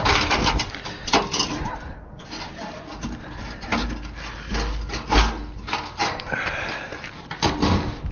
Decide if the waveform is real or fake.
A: real